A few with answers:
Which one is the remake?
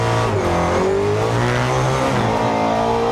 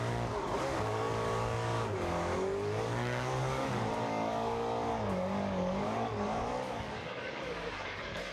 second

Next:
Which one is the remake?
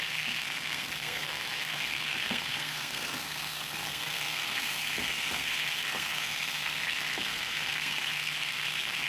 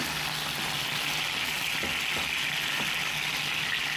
first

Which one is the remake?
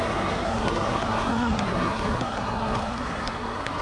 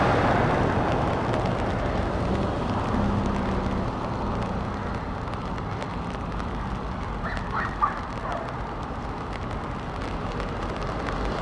first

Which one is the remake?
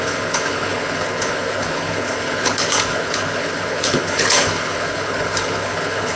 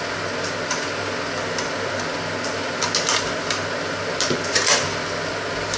first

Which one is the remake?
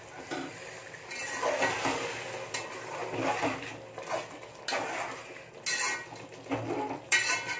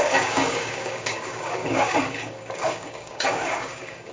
second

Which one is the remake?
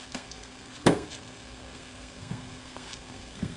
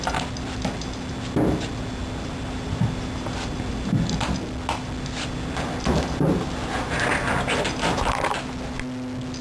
first